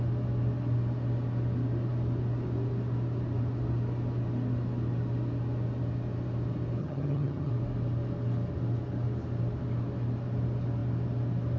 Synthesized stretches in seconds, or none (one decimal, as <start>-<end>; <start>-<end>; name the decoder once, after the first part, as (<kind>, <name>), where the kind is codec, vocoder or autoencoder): 6.8-7.5 (vocoder, HiFi-GAN)